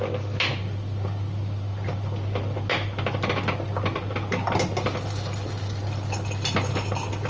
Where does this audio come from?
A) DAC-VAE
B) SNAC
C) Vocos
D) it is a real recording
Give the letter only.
D